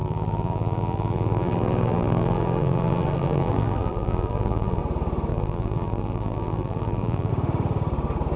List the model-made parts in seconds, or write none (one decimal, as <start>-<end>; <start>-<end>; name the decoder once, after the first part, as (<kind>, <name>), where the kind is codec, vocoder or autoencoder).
0.0-4.8 (vocoder, BigVGAN v2); 5.3-7.3